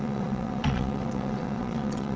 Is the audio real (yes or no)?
no